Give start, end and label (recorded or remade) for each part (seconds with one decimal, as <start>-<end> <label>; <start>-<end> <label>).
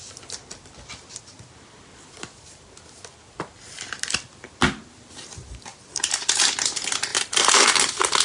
0.0-5.7 recorded; 5.7-6.3 remade; 6.3-7.1 recorded; 7.1-7.7 remade; 7.7-8.2 recorded